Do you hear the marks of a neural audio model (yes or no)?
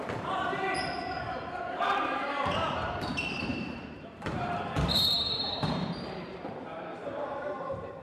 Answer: yes